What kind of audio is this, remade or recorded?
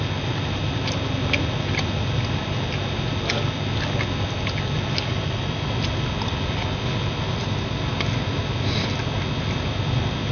recorded